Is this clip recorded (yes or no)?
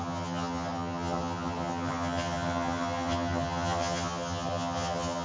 no